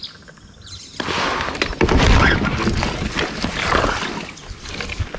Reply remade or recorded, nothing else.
recorded